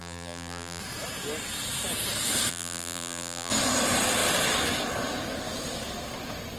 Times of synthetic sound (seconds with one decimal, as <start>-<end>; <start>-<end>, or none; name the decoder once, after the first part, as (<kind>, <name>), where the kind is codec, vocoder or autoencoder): 0.0-0.8 (vocoder, BigVGAN v2); 2.5-3.5